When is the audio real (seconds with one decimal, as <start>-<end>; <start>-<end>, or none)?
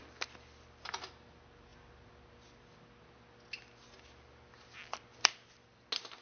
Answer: 0.0-6.2